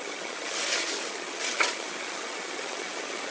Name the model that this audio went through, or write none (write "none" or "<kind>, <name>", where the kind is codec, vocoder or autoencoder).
vocoder, HiFi-GAN